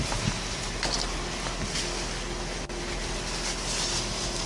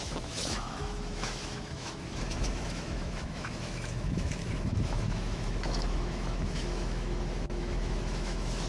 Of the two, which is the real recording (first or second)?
first